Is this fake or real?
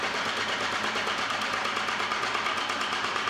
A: fake